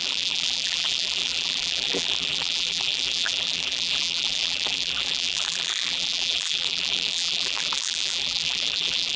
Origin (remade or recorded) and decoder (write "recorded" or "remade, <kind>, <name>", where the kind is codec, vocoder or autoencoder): remade, vocoder, BigVGAN v2